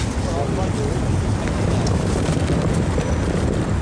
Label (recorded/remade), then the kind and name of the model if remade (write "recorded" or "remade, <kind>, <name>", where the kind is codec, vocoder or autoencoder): recorded